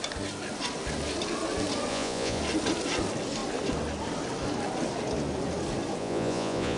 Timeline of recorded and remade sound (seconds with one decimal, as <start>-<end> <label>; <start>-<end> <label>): 0.0-1.9 recorded; 1.9-2.4 remade; 2.4-6.0 recorded; 6.0-6.8 remade